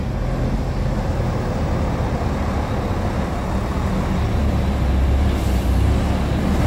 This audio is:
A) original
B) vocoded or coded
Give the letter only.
A